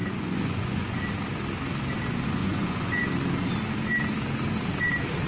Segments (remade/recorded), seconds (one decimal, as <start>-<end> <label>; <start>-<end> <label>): 0.0-1.0 remade; 1.0-2.4 recorded; 2.4-3.0 remade; 3.0-5.3 recorded